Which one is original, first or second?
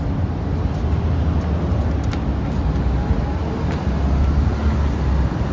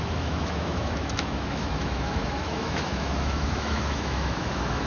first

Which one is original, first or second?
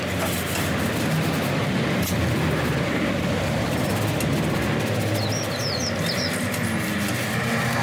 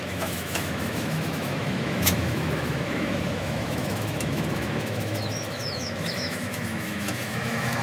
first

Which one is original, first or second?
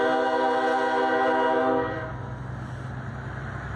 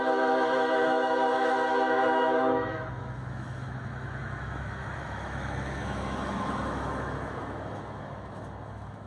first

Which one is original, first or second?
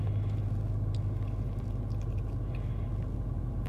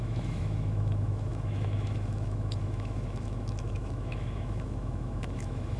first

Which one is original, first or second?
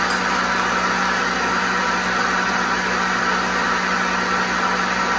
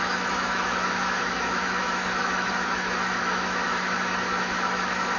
first